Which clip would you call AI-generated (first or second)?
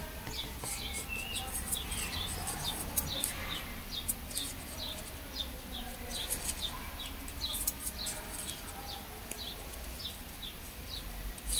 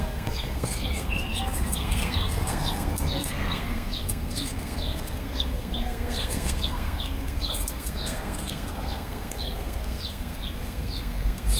second